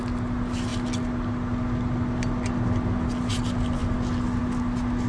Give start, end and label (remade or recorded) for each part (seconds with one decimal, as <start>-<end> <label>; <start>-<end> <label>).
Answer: 0.0-5.1 recorded